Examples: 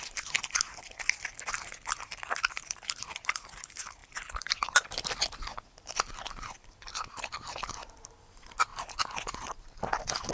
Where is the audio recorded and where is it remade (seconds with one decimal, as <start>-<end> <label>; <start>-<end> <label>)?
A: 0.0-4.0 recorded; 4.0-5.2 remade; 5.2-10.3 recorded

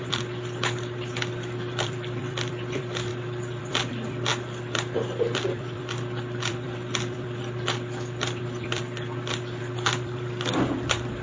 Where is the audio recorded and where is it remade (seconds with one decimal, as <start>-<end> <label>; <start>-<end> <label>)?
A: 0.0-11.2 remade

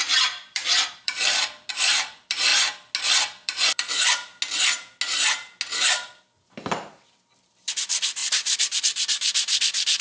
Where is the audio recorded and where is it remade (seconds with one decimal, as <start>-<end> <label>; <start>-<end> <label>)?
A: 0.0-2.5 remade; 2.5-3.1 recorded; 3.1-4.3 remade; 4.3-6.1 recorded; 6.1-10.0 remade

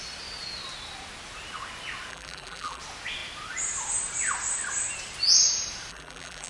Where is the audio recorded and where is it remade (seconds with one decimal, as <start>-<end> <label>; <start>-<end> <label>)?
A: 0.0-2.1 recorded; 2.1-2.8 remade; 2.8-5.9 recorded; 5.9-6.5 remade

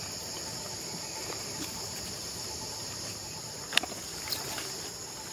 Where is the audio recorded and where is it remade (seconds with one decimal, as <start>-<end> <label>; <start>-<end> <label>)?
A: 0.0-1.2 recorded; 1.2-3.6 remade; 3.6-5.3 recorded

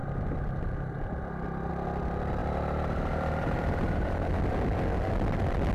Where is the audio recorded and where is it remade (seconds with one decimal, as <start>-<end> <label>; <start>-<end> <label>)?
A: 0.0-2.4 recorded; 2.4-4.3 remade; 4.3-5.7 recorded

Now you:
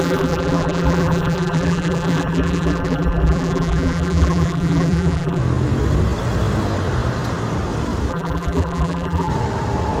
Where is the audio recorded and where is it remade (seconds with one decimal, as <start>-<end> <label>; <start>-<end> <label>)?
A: 0.0-5.4 remade; 5.4-8.1 recorded; 8.1-9.3 remade; 9.3-10.0 recorded